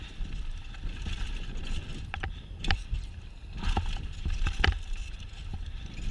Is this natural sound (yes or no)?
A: yes